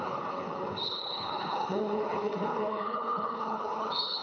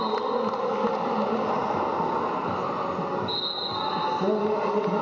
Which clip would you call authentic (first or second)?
second